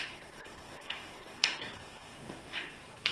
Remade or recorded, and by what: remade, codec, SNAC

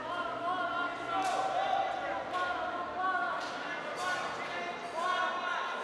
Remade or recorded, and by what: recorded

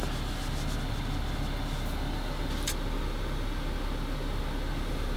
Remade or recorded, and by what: recorded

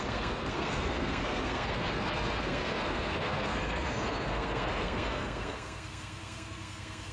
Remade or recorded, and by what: remade, codec, SNAC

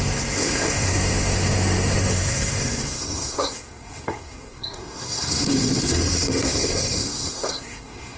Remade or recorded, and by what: remade, codec, SNAC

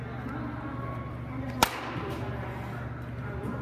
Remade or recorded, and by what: recorded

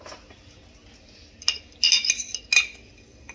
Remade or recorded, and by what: recorded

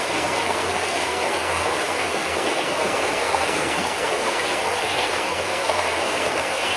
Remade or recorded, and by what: remade, codec, SNAC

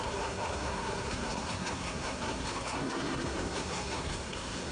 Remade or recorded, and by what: remade, codec, SNAC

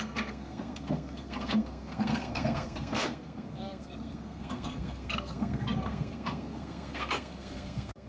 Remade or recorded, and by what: remade, codec, SNAC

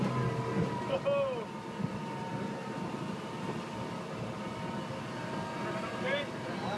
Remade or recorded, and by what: recorded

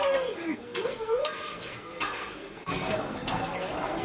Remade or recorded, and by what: remade, codec, SNAC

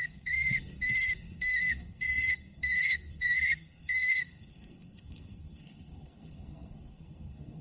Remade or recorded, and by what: remade, codec, SNAC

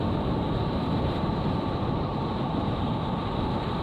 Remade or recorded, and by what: recorded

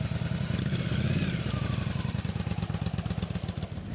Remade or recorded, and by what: recorded